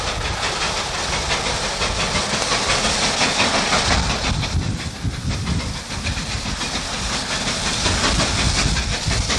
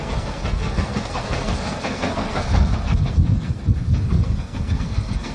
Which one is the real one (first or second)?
first